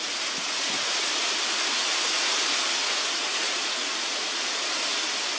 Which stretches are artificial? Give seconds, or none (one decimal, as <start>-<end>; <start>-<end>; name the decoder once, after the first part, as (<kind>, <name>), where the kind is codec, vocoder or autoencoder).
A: 0.0-1.1 (vocoder, Vocos); 2.8-4.4